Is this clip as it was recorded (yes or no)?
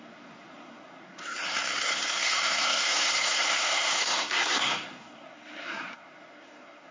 no